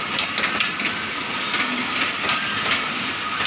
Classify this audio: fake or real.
real